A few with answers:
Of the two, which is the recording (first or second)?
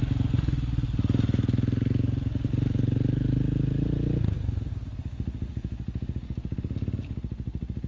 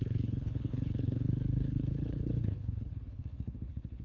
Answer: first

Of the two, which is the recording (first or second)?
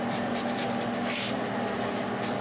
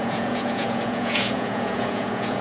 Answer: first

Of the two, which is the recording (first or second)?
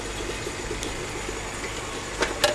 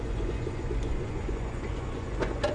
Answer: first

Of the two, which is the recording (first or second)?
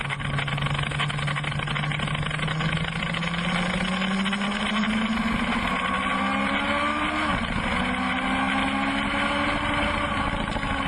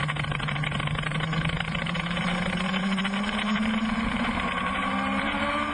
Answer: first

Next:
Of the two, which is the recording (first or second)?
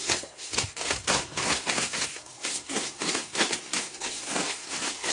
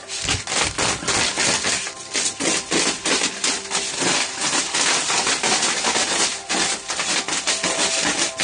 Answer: second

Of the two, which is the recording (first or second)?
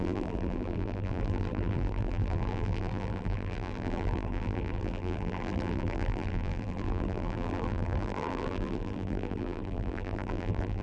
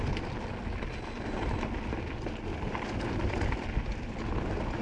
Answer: second